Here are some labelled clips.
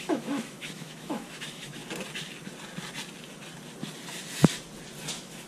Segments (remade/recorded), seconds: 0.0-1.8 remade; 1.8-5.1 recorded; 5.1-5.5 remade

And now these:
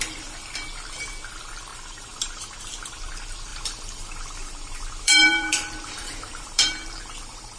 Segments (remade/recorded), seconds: 0.0-1.7 recorded; 1.7-2.6 remade; 2.6-3.5 recorded; 3.5-7.6 remade